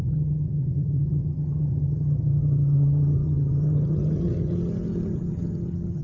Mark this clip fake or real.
fake